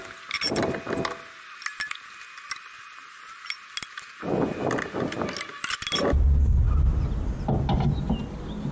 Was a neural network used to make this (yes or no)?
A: no